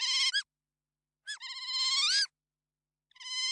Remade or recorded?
recorded